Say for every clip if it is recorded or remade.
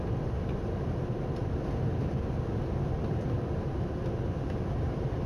recorded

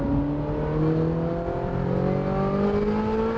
recorded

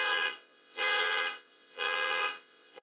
remade